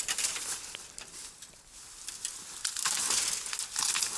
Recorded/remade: recorded